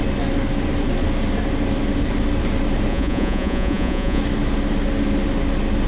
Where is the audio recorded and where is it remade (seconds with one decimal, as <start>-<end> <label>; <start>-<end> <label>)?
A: 0.0-2.9 recorded; 2.9-4.2 remade; 4.2-5.9 recorded